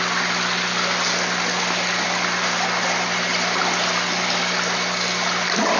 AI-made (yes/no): no